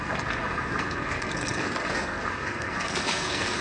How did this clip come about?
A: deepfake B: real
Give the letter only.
A